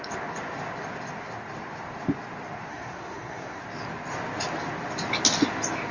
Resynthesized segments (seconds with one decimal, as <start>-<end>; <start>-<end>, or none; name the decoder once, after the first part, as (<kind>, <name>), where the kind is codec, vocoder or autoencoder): 2.7-3.6 (codec, SNAC)